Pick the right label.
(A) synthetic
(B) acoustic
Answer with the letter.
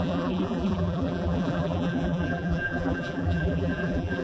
A